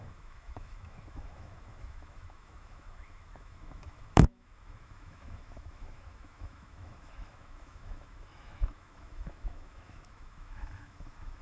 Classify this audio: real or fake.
fake